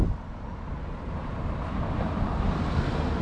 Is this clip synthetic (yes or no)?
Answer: no